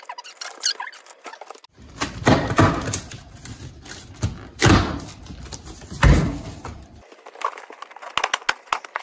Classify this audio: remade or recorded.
recorded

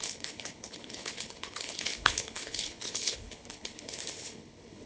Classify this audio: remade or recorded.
remade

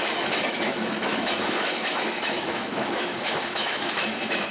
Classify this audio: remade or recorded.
remade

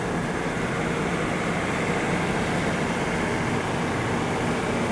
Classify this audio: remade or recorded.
recorded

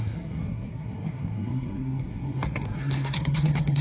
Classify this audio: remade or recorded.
remade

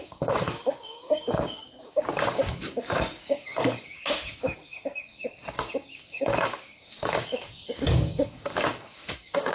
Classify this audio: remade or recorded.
remade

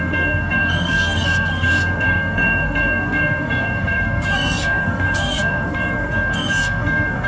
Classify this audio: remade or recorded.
remade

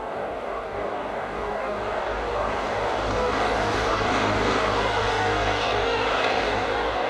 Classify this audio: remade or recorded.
remade